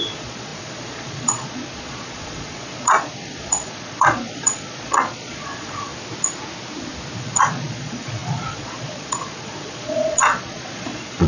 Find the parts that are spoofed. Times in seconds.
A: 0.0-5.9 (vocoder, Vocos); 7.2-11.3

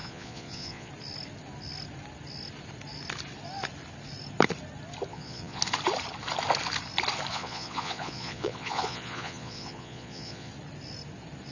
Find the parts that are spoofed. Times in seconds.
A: 0.0-0.9 (vocoder, Vocos); 5.1-5.6; 7.3-10.5

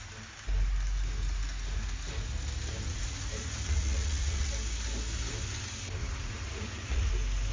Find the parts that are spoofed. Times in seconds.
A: 2.9-4.5 (vocoder, Vocos); 6.0-7.1

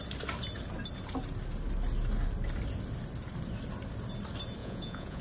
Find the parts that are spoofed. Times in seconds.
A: 4.6-5.2 (vocoder, Vocos)

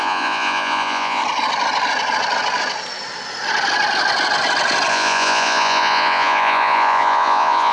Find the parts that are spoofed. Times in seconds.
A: 0.0-1.2 (vocoder, Vocos); 4.9-7.7

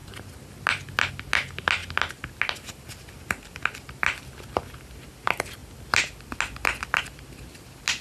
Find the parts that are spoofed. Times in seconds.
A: none